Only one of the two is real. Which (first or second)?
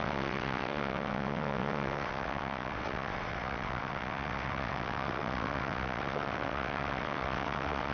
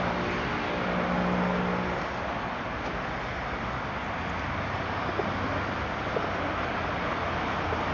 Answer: second